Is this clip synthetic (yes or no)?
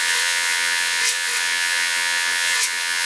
yes